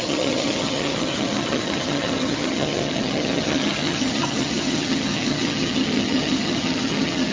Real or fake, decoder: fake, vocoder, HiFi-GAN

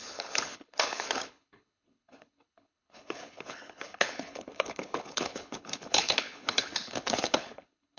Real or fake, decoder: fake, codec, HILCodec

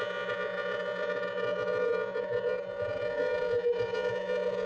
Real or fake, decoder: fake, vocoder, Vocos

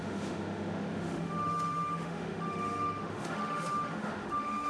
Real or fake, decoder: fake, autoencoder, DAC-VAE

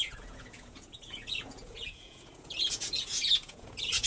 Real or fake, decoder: fake, vocoder, Vocos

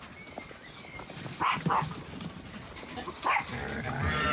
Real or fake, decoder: real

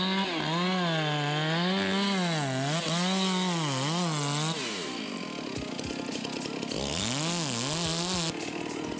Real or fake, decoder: real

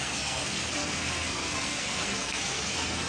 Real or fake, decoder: fake, codec, SNAC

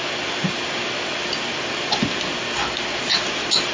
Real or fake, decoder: real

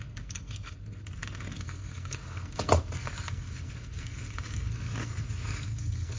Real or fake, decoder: fake, codec, SNAC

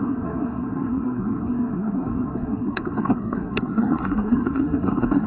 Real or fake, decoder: fake, codec, SNAC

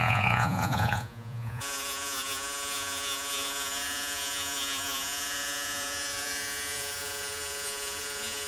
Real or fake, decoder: fake, vocoder, Vocos